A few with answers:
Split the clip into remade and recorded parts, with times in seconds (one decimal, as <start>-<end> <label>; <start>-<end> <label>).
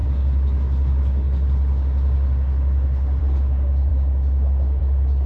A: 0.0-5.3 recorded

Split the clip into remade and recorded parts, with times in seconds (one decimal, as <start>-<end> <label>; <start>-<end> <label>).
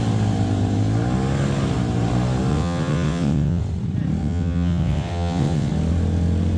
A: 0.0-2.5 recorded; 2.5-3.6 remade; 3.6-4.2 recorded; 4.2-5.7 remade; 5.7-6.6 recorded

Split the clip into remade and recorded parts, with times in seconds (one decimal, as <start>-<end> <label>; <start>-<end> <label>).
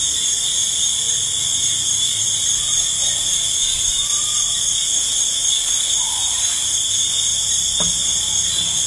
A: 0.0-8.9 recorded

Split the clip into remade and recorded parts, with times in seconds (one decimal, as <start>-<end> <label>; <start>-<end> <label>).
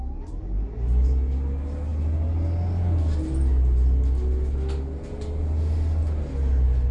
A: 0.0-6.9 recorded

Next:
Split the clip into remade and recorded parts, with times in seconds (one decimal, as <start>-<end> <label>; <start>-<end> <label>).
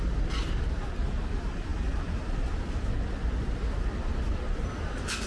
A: 0.0-5.3 recorded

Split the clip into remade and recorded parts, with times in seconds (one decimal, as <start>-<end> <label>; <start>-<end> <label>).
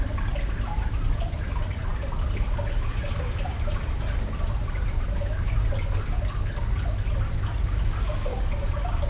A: 0.0-9.1 recorded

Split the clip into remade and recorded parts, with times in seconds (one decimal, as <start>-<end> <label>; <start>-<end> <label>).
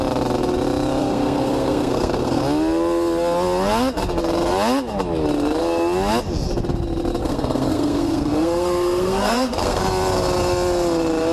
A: 0.0-1.0 recorded; 1.0-2.4 remade; 2.4-7.2 recorded; 7.2-9.8 remade; 9.8-11.3 recorded